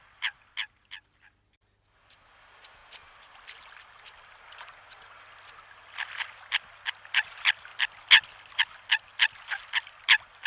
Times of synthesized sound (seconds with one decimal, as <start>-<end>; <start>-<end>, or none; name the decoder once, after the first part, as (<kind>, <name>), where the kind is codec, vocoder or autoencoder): none